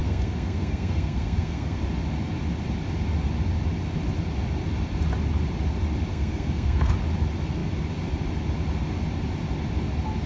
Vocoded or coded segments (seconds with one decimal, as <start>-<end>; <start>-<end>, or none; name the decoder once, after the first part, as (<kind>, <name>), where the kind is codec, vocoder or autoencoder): 0.0-1.8 (codec, SNAC); 6.1-6.9